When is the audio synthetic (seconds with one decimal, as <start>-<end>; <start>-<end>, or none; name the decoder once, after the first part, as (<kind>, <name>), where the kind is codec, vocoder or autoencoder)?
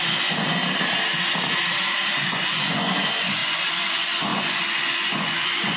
0.0-0.6 (vocoder, Vocos); 2.1-5.8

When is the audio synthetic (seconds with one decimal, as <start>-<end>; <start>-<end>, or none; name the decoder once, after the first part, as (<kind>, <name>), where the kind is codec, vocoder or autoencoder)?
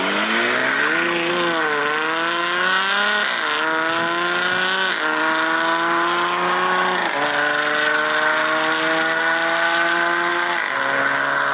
none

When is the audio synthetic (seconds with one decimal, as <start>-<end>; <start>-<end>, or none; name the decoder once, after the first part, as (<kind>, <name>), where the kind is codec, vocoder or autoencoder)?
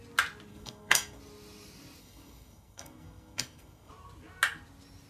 0.5-1.2 (codec, SNAC); 2.0-3.9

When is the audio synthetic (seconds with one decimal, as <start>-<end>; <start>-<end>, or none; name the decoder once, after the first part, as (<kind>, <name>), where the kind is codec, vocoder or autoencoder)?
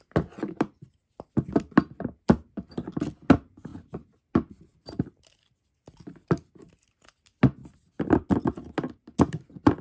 4.7-5.5 (vocoder, BigVGAN v2); 7.6-8.3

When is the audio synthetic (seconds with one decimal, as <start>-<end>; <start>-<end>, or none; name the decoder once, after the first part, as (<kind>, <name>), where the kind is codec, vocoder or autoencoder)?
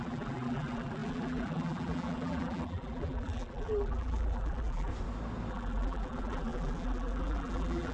0.0-4.9 (vocoder, BigVGAN v2); 5.5-7.9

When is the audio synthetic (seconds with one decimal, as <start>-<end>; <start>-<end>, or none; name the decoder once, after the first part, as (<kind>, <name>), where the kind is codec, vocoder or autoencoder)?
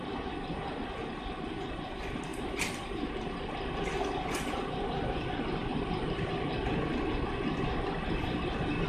5.7-6.3 (vocoder, BigVGAN v2)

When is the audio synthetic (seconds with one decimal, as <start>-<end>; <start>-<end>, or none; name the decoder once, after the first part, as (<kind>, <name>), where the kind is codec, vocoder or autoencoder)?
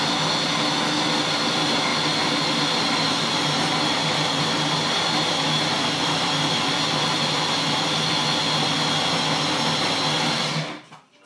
none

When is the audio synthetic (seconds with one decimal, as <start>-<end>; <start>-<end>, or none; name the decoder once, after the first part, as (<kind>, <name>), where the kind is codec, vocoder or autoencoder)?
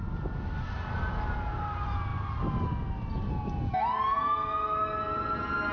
none